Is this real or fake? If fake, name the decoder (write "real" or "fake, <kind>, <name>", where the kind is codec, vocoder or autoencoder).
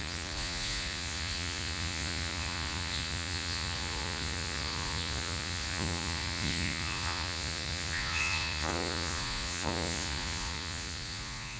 fake, vocoder, Vocos